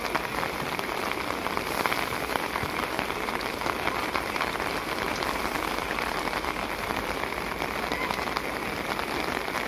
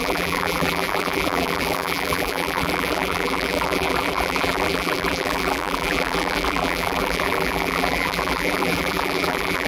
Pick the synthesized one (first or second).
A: second